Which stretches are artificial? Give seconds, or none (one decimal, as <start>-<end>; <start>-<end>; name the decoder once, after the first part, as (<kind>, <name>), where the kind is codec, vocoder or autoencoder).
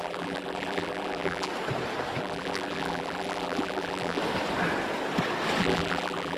0.0-1.5 (vocoder, BigVGAN v2); 2.2-4.2; 5.6-6.4